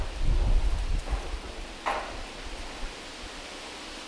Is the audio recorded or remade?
recorded